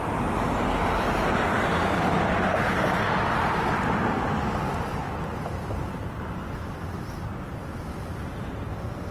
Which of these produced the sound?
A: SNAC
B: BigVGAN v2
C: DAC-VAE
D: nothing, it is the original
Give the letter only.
D